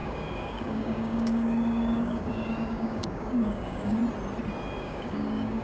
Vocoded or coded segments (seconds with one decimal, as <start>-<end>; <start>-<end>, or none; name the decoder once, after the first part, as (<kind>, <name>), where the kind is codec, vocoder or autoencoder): 0.0-4.0 (codec, DAC); 4.8-5.6